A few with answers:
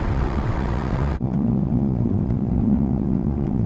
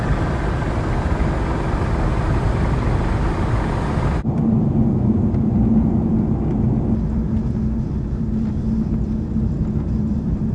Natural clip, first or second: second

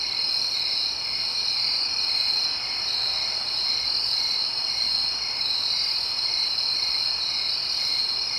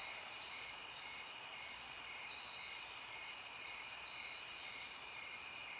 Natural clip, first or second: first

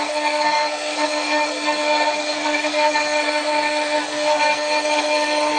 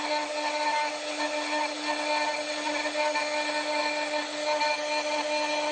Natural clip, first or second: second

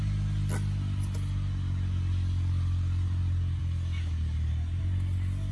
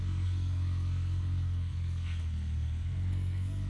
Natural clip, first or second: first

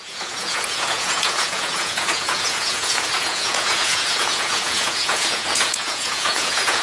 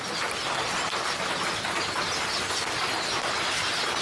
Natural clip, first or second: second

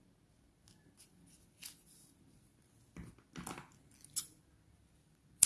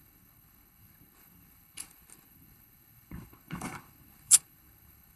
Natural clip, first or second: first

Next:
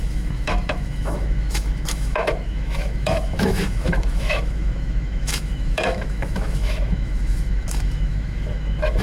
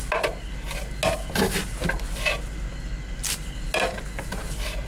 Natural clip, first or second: second